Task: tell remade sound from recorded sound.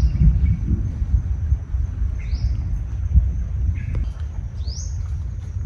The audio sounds recorded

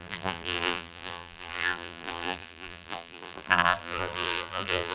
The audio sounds remade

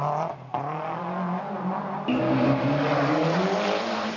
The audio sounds recorded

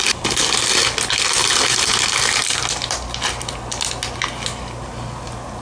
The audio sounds recorded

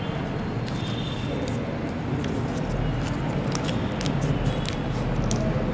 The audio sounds recorded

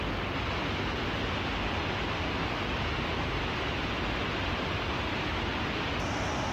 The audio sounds recorded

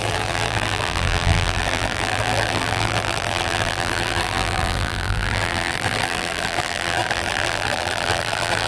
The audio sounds remade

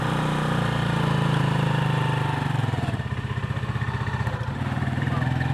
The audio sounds remade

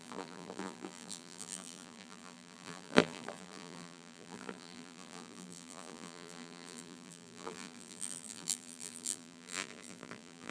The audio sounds remade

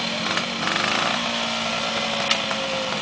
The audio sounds recorded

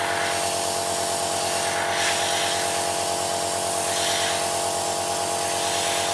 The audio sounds recorded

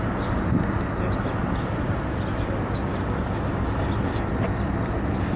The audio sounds recorded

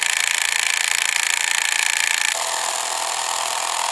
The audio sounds recorded